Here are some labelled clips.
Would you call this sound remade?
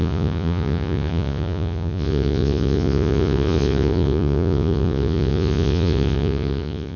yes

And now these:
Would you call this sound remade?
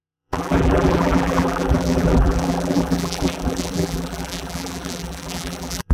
yes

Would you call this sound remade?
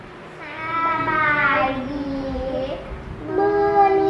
no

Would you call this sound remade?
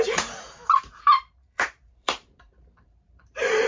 yes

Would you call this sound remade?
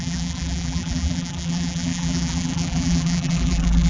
yes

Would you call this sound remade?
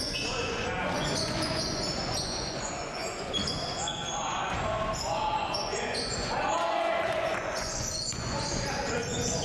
yes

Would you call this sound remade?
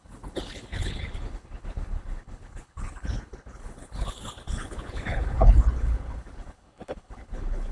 yes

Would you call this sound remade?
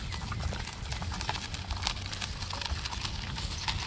no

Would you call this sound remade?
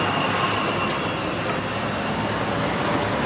no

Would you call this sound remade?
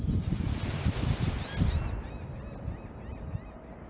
no